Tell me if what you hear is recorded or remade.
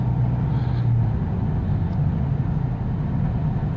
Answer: recorded